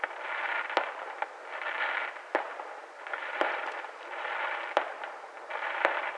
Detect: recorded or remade recorded